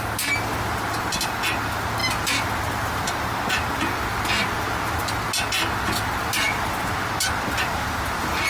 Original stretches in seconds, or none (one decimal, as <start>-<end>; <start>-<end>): 0.0-8.5